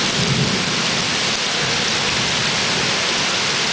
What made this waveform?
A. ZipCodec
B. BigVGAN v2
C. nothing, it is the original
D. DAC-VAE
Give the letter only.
C